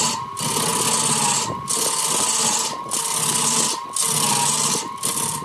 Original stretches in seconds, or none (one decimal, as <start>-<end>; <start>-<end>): 0.0-5.4

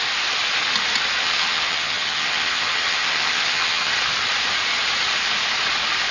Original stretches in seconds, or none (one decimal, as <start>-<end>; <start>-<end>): 0.0-1.2; 3.9-6.1

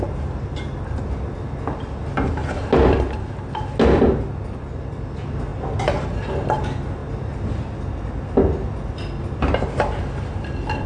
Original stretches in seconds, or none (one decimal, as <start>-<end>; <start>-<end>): 0.0-10.9

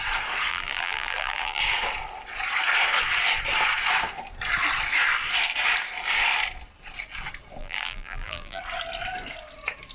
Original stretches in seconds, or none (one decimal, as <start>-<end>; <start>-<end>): 0.0-0.5; 1.6-7.6; 8.6-9.9

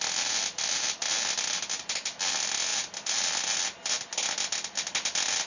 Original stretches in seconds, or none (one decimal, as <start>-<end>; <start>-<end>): 0.0-5.5

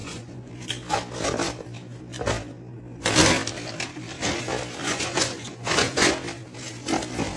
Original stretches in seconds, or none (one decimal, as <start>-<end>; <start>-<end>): 0.5-4.8; 6.1-7.4